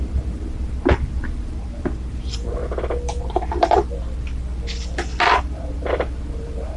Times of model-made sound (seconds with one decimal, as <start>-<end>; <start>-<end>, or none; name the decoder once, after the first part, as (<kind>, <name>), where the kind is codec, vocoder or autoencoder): 0.0-2.6 (vocoder, BigVGAN v2); 3.3-3.8; 5.3-6.8